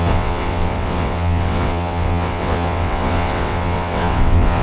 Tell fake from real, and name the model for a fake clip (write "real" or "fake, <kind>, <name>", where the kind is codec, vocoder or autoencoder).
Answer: fake, vocoder, WaveNeXt